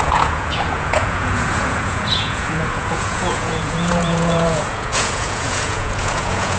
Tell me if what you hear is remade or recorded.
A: remade